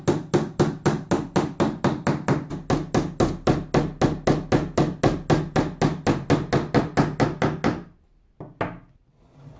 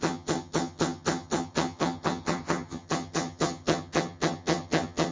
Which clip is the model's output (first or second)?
second